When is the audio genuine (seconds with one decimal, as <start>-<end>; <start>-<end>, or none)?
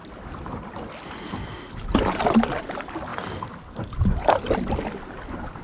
0.0-5.6